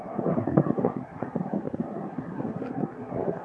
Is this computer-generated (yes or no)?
yes